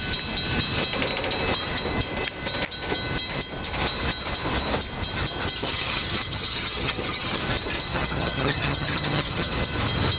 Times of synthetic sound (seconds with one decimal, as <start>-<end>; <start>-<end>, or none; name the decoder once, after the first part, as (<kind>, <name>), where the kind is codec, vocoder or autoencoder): 5.6-7.4 (vocoder, HiFi-GAN); 7.9-9.5